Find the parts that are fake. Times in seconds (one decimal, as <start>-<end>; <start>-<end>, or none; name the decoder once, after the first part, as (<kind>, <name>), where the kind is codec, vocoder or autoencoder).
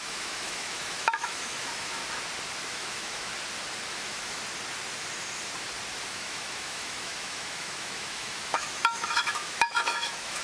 0.0-2.0 (autoencoder, DAC-VAE); 2.7-3.3; 3.9-4.4; 6.1-10.4